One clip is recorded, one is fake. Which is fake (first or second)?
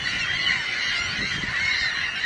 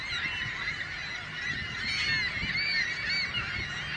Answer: first